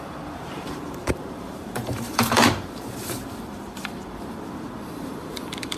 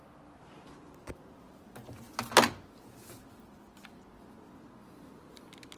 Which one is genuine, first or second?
second